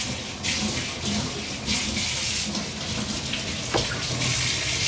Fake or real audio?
real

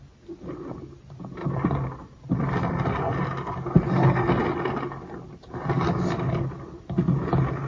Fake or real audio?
real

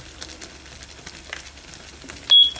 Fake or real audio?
real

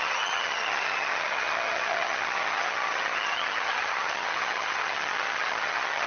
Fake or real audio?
fake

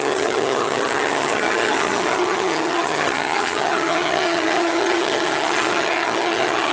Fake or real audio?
fake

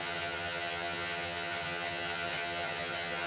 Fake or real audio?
fake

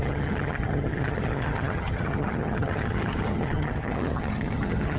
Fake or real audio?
fake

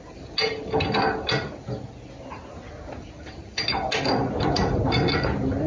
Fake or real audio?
real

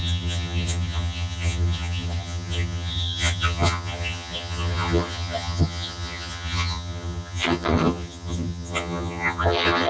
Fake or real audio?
fake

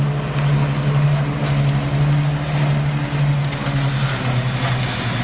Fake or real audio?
real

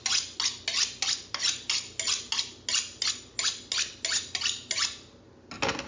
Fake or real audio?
real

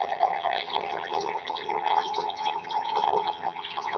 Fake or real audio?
fake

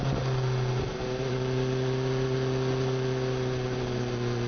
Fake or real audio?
real